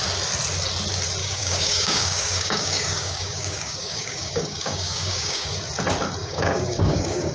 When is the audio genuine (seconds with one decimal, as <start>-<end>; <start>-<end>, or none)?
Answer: 0.0-1.2; 5.6-6.2